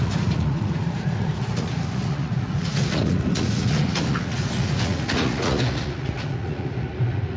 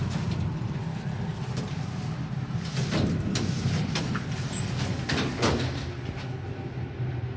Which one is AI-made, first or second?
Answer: first